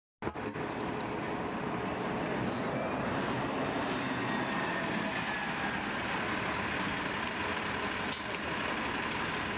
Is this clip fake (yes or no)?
no